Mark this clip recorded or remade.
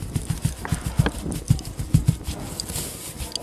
recorded